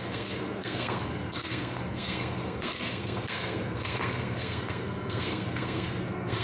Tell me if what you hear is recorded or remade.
remade